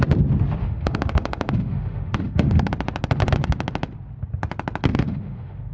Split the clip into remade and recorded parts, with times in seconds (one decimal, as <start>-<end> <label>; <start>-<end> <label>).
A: 0.0-0.6 recorded; 0.6-2.7 remade; 2.7-4.9 recorded; 4.9-5.7 remade